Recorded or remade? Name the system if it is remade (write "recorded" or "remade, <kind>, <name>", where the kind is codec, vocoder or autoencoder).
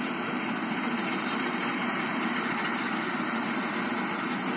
recorded